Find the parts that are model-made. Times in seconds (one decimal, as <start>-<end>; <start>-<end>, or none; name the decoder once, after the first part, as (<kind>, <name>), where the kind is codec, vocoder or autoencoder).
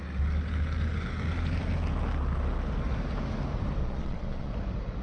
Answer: 3.8-4.5 (vocoder, Vocos)